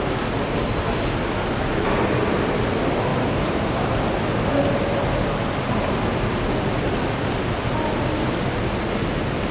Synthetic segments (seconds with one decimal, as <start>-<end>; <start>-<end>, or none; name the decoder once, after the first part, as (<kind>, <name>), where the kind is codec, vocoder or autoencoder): 3.1-3.9 (vocoder, BigVGAN v2)